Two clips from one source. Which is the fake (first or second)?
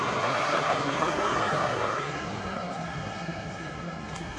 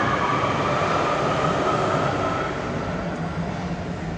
first